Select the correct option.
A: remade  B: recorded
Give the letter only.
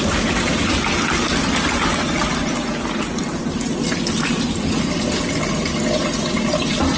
B